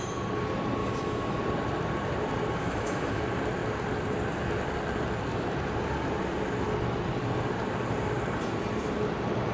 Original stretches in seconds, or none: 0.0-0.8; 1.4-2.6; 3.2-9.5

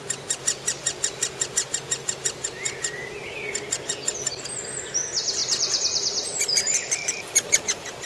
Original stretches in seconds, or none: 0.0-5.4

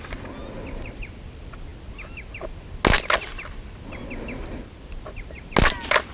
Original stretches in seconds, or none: 0.0-6.1